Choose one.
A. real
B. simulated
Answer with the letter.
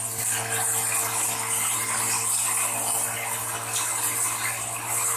A